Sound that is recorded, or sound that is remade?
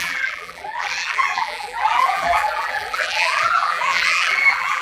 remade